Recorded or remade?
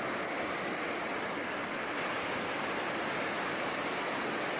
recorded